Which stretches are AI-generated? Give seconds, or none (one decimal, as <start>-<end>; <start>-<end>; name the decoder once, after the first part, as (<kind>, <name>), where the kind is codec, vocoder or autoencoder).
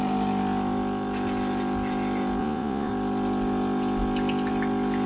2.4-2.9 (vocoder, Vocos)